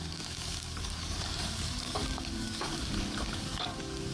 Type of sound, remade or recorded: remade